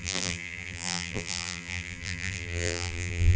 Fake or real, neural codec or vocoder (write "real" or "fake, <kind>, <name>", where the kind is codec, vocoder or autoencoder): fake, vocoder, BigVGAN v2